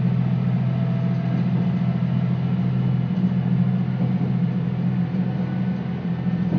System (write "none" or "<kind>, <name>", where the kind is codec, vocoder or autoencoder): none